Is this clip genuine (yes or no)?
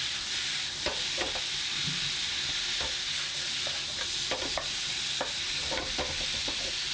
yes